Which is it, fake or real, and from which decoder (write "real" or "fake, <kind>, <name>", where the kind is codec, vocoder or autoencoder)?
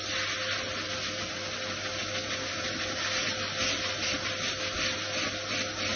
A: real